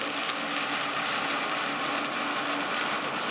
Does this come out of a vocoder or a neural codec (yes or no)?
no